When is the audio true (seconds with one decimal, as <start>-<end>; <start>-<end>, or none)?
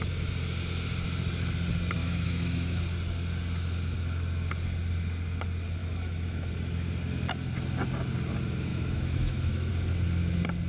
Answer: 0.0-2.0; 2.8-5.8; 6.5-8.7; 9.7-10.7